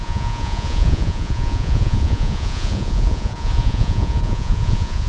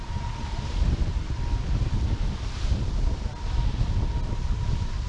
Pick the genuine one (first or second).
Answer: second